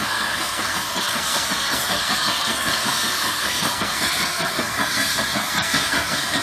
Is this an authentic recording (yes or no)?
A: no